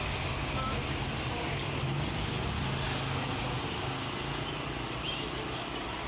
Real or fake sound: real